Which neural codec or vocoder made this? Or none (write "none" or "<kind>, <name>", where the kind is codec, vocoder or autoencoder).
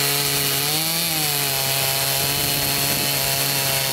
none